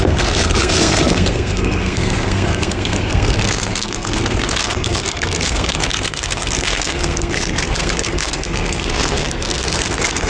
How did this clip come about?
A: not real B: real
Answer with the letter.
A